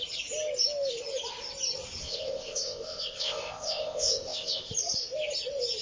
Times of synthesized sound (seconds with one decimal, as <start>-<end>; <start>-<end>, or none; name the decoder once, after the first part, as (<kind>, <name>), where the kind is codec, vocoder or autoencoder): 2.0-4.7 (codec, ZipCodec)